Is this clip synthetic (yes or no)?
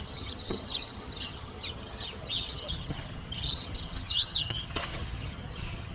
yes